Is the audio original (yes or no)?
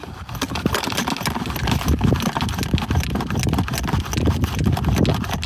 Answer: yes